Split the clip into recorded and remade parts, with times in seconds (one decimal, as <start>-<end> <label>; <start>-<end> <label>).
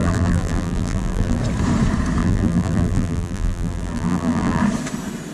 0.0-1.4 remade; 1.4-2.2 recorded; 2.2-4.6 remade; 4.6-5.3 recorded